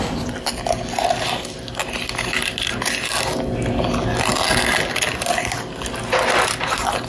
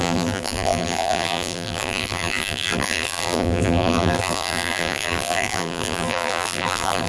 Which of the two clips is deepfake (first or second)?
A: second